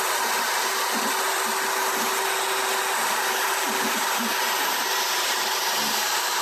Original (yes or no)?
yes